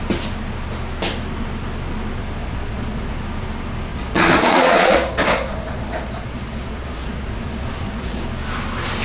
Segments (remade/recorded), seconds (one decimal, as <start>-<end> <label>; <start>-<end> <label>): 0.0-2.4 recorded; 2.4-3.1 remade; 3.1-3.9 recorded; 3.9-8.2 remade; 8.2-9.0 recorded